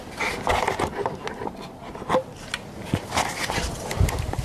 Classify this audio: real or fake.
real